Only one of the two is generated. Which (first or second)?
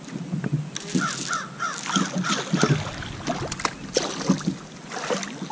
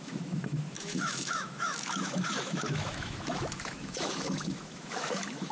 second